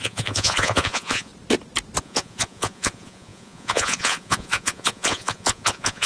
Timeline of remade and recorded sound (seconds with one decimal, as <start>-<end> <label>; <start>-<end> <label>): 0.0-1.3 remade; 1.3-2.0 recorded; 2.0-6.1 remade